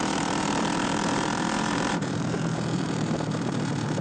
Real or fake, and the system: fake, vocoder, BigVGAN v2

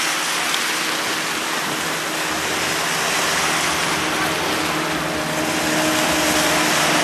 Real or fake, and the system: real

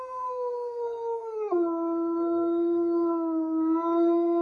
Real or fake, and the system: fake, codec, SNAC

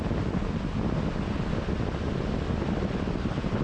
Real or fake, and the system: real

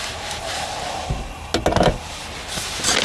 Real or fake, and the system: real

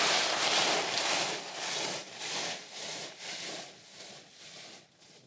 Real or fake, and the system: real